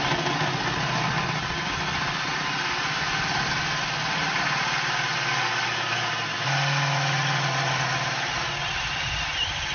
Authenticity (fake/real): real